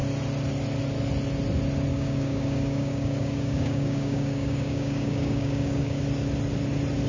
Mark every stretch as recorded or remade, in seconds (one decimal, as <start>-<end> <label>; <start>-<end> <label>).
0.0-1.9 recorded; 1.9-6.0 remade; 6.0-7.1 recorded

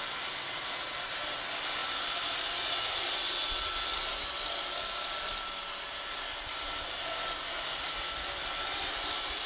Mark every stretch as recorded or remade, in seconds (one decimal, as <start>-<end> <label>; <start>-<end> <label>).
0.0-9.5 recorded

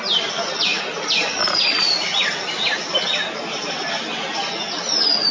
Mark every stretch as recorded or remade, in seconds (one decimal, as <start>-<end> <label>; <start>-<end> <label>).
0.0-5.3 recorded

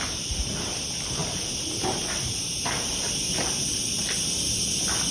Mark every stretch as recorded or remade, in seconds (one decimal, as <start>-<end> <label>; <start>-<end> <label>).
0.0-1.2 recorded; 1.2-2.5 remade; 2.5-5.1 recorded

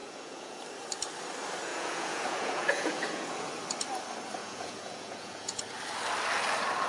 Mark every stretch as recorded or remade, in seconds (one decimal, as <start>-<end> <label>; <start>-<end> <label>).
0.0-0.6 remade; 0.6-1.7 recorded; 1.7-3.5 remade; 3.5-4.4 recorded; 4.4-5.6 remade; 5.6-6.9 recorded

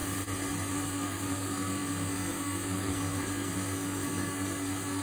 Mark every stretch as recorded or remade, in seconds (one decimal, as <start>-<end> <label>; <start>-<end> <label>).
0.0-0.7 recorded; 0.7-5.0 remade

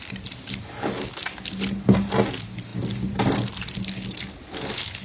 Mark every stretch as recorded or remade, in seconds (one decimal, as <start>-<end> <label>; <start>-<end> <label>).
0.0-5.0 recorded